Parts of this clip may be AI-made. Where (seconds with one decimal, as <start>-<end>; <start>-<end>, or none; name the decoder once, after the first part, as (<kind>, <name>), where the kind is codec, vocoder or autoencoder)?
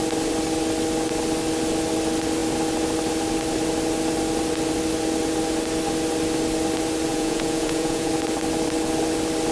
7.1-8.1 (vocoder, Vocos)